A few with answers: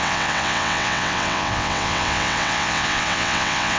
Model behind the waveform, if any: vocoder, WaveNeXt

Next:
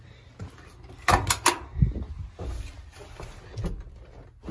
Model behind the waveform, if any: none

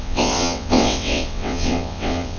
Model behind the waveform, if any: vocoder, WaveNeXt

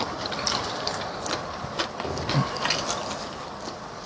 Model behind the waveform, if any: none